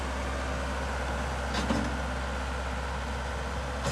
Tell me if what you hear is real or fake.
real